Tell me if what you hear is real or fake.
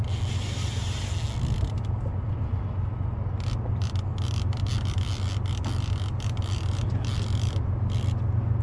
real